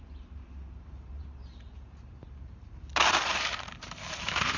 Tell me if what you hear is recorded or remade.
remade